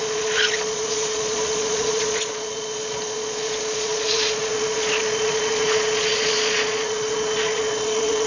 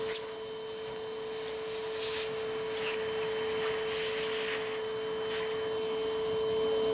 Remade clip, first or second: first